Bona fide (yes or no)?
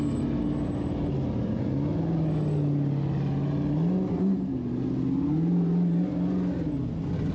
yes